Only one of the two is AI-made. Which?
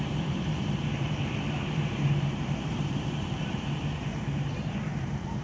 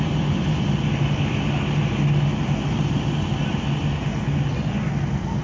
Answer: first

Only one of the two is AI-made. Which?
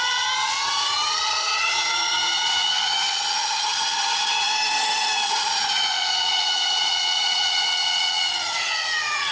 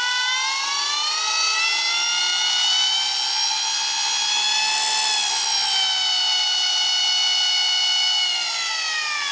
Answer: first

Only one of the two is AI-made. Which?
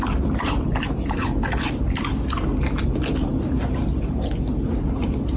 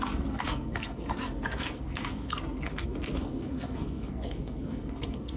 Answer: second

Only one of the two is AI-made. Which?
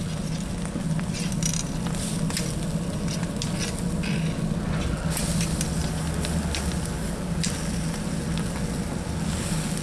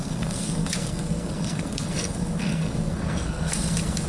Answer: second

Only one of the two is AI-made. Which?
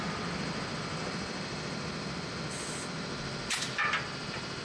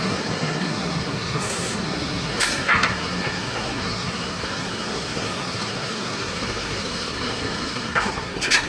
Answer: second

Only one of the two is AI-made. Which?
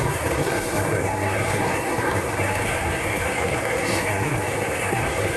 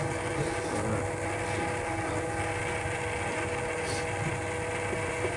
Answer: first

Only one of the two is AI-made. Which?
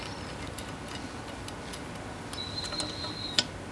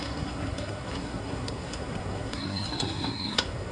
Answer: second